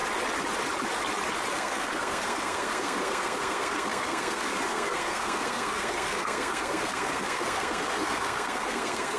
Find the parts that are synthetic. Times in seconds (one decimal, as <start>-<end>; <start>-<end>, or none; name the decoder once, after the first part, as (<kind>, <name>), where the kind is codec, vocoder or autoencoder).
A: 1.5-9.2 (codec, SNAC)